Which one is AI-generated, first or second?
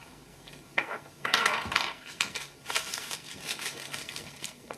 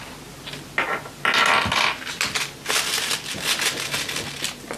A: first